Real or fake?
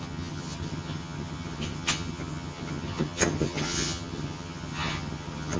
fake